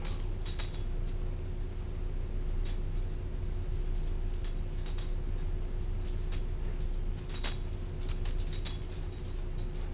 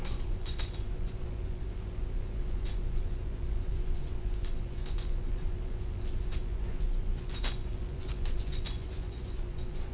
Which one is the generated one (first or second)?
second